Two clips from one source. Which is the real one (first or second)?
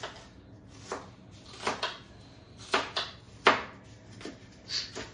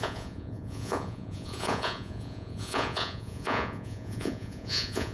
first